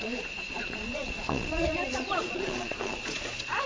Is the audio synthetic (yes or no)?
yes